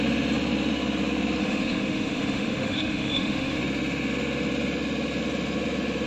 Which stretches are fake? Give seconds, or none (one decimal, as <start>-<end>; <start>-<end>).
1.4-3.6